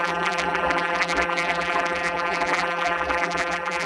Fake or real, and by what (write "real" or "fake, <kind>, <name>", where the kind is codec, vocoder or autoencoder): fake, vocoder, BigVGAN v2